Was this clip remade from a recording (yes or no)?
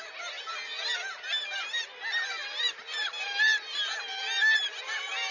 no